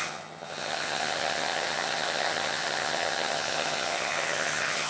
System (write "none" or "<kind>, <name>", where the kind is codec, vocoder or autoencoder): vocoder, HiFi-GAN